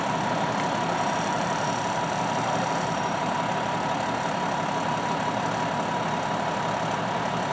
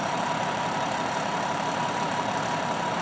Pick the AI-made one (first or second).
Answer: second